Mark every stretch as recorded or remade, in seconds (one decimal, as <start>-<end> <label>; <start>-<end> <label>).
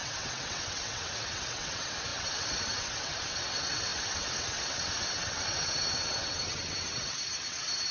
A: 0.0-7.9 remade